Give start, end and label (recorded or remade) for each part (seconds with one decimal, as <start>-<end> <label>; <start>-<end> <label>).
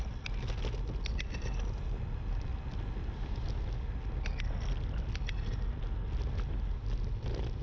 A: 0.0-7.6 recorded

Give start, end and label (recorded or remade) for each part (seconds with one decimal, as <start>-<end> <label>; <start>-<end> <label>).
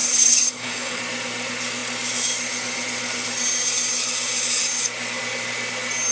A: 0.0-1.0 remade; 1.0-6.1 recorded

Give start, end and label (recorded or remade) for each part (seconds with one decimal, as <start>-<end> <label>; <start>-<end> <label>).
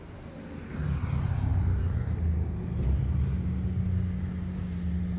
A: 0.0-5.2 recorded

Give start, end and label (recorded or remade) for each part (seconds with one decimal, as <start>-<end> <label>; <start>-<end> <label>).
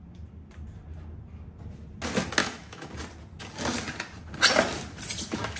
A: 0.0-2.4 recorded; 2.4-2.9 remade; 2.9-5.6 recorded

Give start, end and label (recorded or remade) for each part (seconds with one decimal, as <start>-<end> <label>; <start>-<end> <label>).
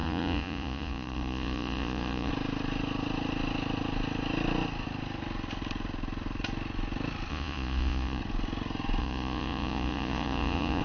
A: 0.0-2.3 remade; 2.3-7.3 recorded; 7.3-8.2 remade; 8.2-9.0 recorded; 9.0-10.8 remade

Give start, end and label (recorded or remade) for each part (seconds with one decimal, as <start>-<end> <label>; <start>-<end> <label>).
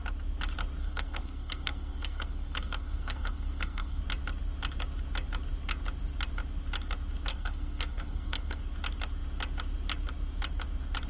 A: 0.0-0.8 recorded; 0.8-4.0 remade; 4.0-7.3 recorded; 7.3-8.6 remade; 8.6-11.1 recorded